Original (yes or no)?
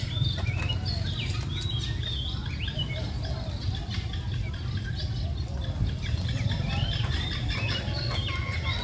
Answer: yes